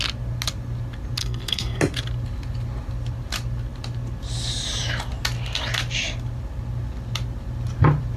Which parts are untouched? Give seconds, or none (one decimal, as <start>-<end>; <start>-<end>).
0.0-1.2; 1.8-8.2

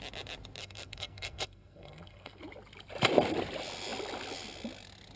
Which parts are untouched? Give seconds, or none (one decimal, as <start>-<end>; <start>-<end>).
0.0-0.6; 2.4-5.2

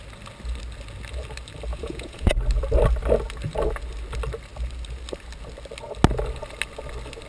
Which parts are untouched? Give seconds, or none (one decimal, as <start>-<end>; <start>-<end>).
0.0-1.7; 2.4-7.3

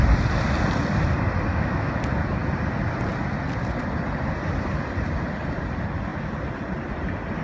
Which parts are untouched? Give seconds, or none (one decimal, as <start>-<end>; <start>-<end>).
0.0-1.5; 2.0-7.4

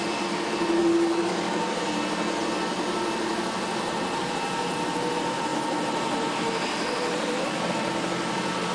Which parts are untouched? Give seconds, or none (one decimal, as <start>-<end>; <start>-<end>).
0.0-0.8; 1.6-8.7

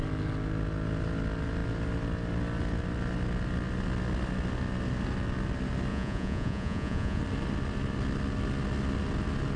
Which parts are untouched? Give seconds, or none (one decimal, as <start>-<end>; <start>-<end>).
0.0-5.9; 7.2-9.6

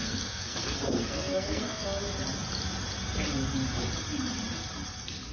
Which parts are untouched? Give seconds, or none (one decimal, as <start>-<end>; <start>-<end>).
2.0-5.3

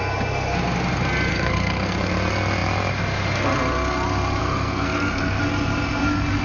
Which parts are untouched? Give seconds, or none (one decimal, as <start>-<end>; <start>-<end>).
0.0-1.3; 2.1-4.4; 5.4-6.4